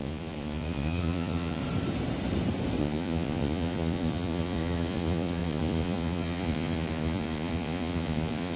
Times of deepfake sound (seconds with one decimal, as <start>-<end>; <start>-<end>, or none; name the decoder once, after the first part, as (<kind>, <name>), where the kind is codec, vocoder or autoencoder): 0.0-1.6 (vocoder, Vocos); 2.8-8.6